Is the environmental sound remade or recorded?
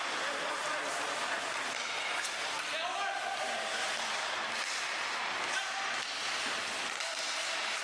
recorded